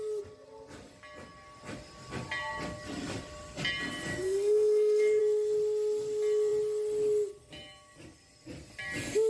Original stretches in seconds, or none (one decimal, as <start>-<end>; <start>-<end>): 0.0-4.1; 5.2-9.3